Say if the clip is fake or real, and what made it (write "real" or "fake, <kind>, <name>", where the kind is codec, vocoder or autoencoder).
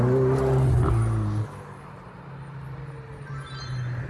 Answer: real